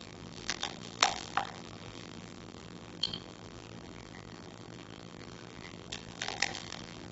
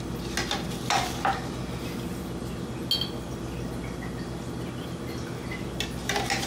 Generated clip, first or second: first